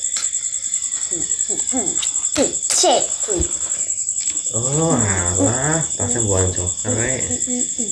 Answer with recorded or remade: recorded